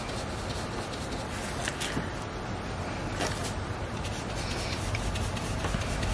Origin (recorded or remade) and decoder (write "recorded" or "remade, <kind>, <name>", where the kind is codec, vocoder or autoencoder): recorded